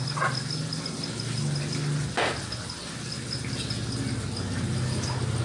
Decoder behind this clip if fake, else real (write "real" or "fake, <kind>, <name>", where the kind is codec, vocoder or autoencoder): real